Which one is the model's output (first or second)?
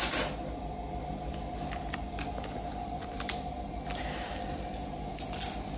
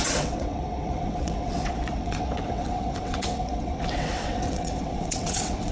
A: second